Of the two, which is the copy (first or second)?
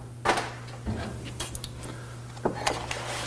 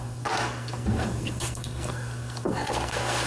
second